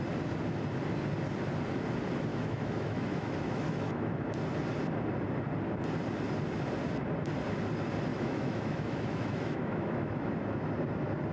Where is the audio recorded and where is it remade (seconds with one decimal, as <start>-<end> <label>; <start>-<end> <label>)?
0.0-2.3 recorded; 2.3-4.1 remade; 4.1-8.1 recorded; 8.1-10.3 remade; 10.3-11.3 recorded